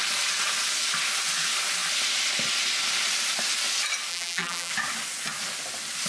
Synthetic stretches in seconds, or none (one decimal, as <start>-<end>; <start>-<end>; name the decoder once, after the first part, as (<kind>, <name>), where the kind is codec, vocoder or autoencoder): 4.1-4.7 (vocoder, BigVGAN v2)